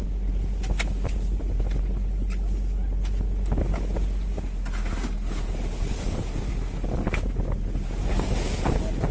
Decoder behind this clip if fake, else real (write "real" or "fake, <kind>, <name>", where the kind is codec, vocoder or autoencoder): real